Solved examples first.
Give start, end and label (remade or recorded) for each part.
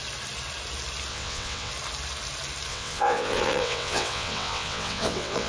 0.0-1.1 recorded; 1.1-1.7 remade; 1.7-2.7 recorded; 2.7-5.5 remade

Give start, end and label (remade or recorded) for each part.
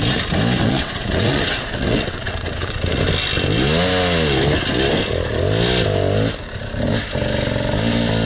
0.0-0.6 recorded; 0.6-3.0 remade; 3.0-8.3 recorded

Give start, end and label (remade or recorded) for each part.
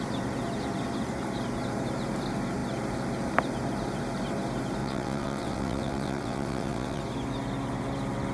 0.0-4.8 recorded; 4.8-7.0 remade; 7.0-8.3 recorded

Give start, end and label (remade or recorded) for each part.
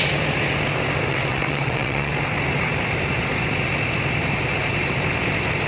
0.0-1.1 recorded; 1.1-2.1 remade; 2.1-5.7 recorded